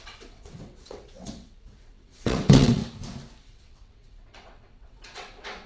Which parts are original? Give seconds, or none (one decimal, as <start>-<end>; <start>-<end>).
2.8-3.4